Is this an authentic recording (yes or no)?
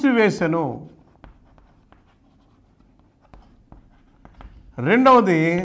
yes